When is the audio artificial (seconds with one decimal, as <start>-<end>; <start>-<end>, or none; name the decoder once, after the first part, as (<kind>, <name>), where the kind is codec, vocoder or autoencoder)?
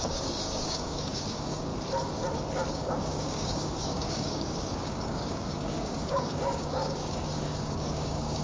0.0-1.7 (codec, DAC); 2.7-8.4